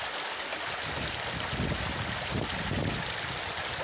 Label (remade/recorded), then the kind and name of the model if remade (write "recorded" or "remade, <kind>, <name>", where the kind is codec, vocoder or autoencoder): recorded